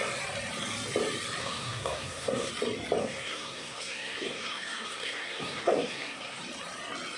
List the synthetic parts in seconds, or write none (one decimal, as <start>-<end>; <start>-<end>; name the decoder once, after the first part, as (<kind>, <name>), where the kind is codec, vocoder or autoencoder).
1.4-2.5 (codec, SNAC); 3.0-6.4